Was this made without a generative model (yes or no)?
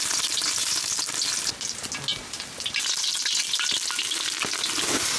yes